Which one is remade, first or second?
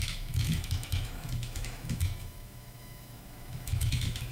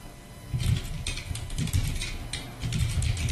first